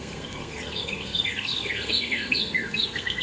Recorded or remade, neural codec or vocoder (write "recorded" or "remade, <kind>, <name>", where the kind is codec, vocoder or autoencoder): remade, codec, SNAC